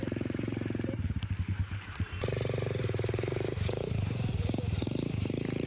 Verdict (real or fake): fake